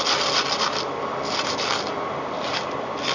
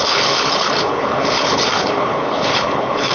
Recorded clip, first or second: first